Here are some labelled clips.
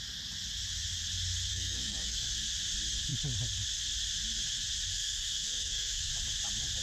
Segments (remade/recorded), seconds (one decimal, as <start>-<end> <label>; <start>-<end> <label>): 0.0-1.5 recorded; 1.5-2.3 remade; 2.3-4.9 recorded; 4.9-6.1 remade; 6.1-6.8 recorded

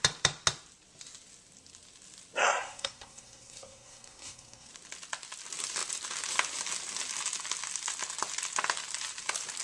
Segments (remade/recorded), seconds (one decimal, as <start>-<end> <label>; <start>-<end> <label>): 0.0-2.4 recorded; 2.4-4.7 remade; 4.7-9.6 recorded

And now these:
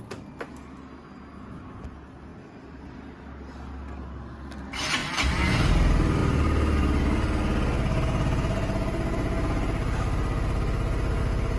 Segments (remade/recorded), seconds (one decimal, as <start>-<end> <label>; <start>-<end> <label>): 0.0-2.3 recorded; 2.3-3.2 remade; 3.2-11.6 recorded

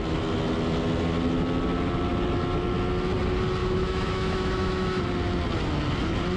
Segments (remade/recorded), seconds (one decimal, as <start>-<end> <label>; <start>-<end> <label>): 0.0-3.6 recorded; 3.6-5.0 remade; 5.0-6.4 recorded

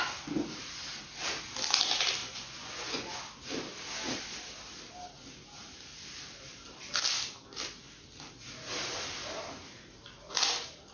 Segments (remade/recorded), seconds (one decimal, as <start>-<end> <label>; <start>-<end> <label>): 0.0-2.2 recorded; 2.2-3.2 remade; 3.2-10.9 recorded

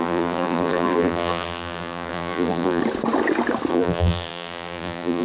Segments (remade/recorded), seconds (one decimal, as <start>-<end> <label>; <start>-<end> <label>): 0.0-2.8 remade; 2.8-3.7 recorded; 3.7-5.2 remade

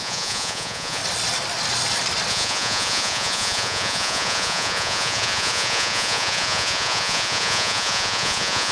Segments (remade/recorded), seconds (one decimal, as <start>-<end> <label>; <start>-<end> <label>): 0.0-1.0 remade; 1.0-2.3 recorded; 2.3-8.7 remade